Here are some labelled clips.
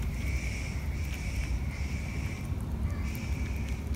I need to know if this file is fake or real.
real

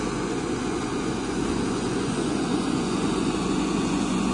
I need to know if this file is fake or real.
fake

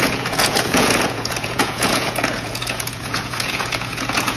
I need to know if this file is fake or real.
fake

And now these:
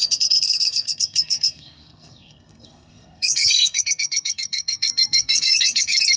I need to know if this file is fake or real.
fake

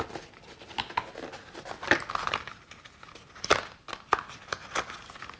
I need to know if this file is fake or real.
real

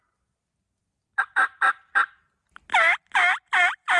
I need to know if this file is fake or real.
real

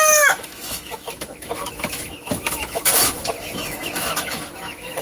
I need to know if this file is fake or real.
fake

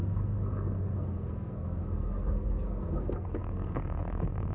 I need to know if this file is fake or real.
fake